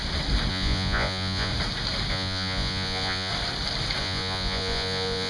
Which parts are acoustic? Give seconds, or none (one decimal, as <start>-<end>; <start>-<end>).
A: 0.0-0.5; 1.5-2.1; 3.3-4.0